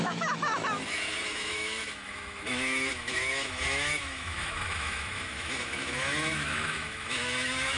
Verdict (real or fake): fake